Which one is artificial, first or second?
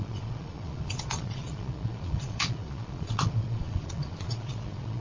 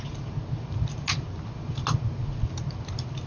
first